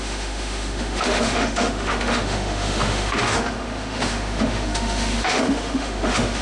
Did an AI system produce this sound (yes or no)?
yes